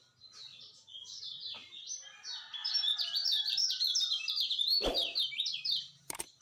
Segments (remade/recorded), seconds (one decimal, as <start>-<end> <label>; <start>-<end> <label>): 0.0-2.6 recorded; 2.6-6.4 remade